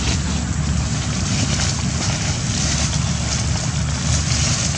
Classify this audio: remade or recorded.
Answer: recorded